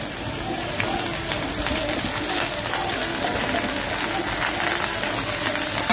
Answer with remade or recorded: recorded